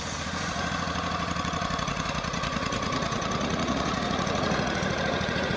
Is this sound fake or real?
fake